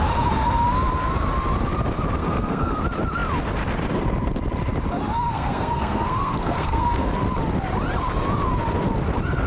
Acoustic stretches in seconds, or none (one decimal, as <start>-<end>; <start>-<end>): 0.0-2.2; 2.8-5.3; 7.1-9.5